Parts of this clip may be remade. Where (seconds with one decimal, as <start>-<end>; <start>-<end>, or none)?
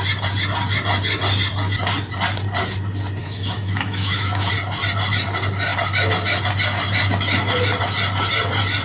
3.2-4.5